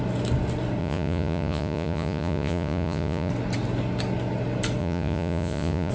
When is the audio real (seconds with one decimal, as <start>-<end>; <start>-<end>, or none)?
0.0-0.8; 3.3-4.8